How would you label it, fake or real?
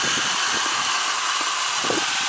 real